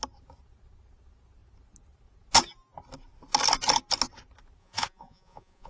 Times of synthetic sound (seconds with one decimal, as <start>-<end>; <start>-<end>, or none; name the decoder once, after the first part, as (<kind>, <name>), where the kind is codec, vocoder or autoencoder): 4.6-5.7 (vocoder, Vocos)